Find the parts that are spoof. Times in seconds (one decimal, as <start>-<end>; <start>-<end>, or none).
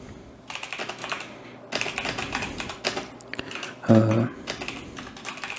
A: none